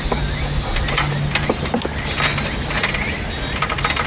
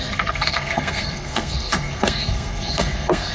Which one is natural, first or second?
first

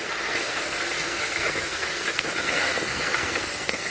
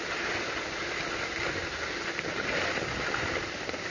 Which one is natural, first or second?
second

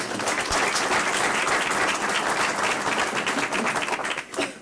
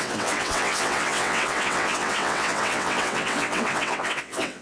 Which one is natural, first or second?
first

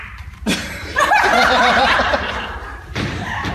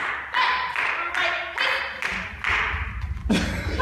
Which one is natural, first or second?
second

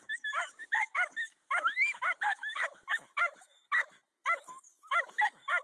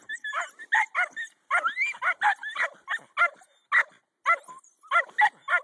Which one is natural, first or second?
second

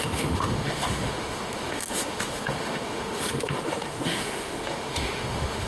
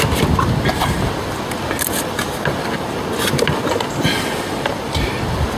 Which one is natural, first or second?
second